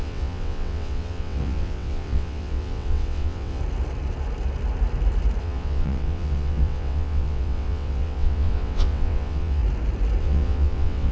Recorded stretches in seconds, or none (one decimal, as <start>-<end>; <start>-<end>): 3.6-5.4; 9.6-10.2